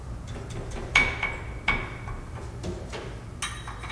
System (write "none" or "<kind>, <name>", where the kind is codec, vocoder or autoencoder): none